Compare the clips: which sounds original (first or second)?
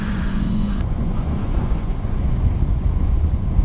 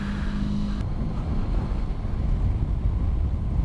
second